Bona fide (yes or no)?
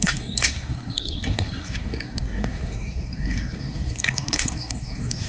no